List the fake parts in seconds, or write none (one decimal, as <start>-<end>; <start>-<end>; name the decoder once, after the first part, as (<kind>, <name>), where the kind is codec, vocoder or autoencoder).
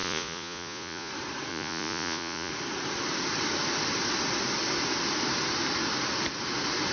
0.0-1.1 (vocoder, Vocos); 1.5-2.5